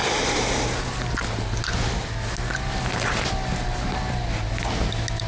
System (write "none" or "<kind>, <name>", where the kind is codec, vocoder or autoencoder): none